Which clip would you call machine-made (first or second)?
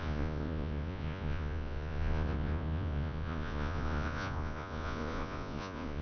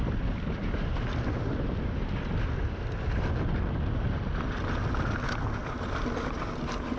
first